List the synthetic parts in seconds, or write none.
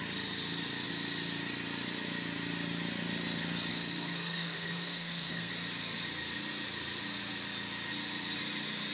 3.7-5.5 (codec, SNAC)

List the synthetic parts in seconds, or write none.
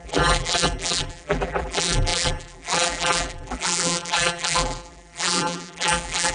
0.0-6.3 (vocoder, BigVGAN v2)